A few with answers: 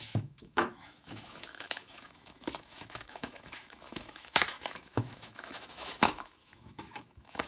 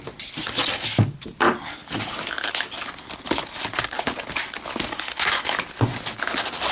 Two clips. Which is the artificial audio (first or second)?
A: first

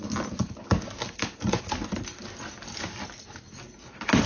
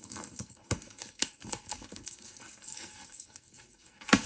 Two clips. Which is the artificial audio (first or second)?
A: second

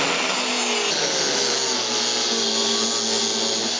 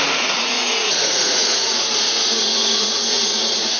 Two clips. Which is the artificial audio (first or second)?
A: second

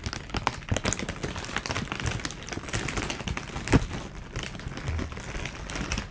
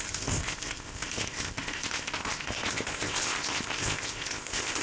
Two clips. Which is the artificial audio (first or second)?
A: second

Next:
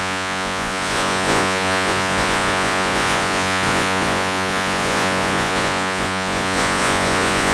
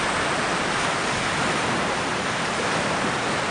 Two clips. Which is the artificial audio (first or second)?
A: first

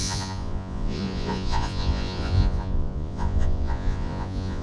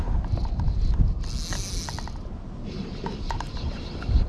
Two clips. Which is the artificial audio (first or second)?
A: first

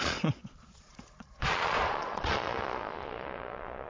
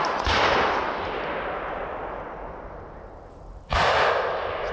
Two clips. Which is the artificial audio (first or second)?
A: first